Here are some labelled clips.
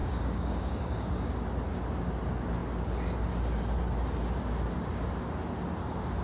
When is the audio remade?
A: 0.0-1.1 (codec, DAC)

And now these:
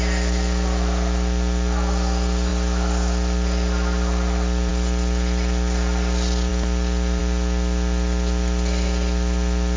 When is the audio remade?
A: none

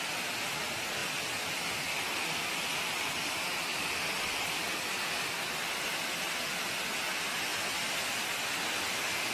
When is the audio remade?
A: none